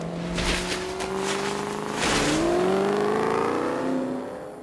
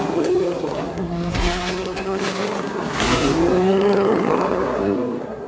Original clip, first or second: first